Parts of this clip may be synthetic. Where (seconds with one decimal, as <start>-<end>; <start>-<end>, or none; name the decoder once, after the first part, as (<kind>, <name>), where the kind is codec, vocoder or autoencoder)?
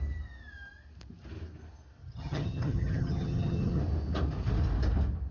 2.0-3.8 (vocoder, HiFi-GAN)